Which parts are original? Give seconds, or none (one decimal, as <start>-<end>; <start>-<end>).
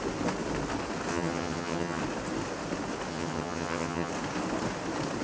0.0-1.1; 2.0-3.1; 4.1-5.2